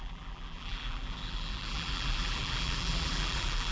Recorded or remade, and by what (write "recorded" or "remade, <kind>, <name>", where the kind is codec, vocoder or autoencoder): remade, vocoder, BigVGAN v2